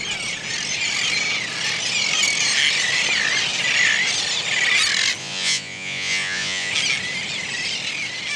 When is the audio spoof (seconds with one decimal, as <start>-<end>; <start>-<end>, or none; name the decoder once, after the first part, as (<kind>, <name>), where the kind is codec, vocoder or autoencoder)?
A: 5.2-6.7 (vocoder, Vocos)